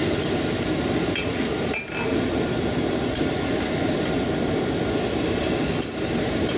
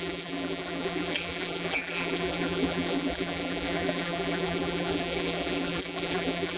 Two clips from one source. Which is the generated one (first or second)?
second